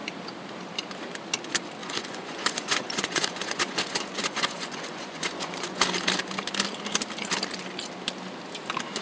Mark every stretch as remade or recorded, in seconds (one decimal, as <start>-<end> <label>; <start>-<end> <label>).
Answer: 0.0-1.8 recorded; 1.8-5.8 remade; 5.8-9.0 recorded